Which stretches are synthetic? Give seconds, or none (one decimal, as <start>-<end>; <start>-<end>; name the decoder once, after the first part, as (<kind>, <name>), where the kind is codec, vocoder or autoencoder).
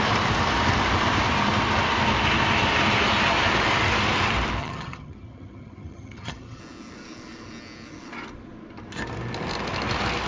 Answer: 4.6-6.6 (vocoder, HiFi-GAN)